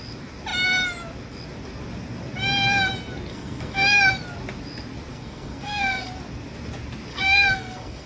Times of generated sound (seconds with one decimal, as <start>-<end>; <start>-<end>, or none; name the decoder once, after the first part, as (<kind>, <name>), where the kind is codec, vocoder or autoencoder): 3.3-4.0 (codec, SNAC); 5.1-6.1; 7.1-8.1